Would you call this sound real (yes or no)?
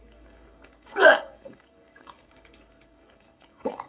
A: no